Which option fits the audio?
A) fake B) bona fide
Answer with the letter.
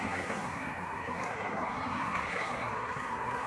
A